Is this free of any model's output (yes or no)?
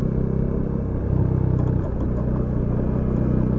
yes